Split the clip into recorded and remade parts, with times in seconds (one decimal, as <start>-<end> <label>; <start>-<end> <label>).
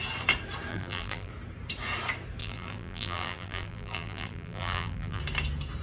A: 0.0-0.7 recorded; 0.7-1.3 remade; 1.3-2.4 recorded; 2.4-5.2 remade; 5.2-5.8 recorded